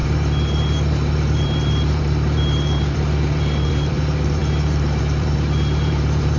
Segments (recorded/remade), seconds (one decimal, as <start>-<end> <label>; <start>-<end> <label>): 0.0-6.4 remade